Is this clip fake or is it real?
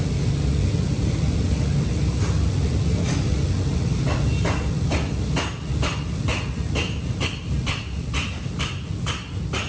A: real